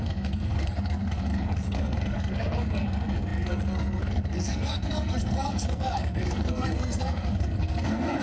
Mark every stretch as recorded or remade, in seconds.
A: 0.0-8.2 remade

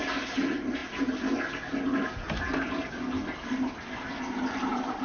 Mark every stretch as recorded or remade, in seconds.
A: 0.0-5.0 recorded

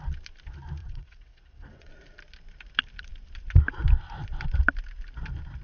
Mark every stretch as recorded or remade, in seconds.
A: 0.0-0.8 recorded; 0.8-1.9 remade; 1.9-5.6 recorded

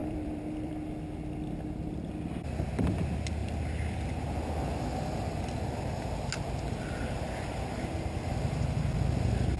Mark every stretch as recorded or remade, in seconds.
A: 0.0-0.7 remade; 0.7-9.6 recorded

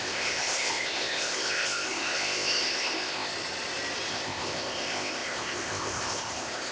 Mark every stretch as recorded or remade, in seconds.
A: 0.0-3.3 remade; 3.3-4.1 recorded; 4.1-6.7 remade